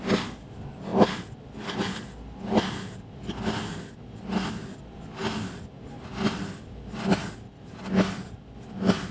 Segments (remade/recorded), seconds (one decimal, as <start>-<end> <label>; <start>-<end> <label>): 0.0-9.1 recorded